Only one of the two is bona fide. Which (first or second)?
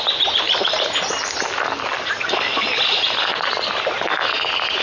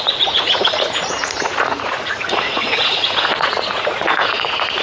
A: first